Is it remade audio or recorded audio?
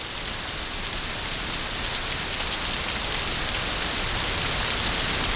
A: recorded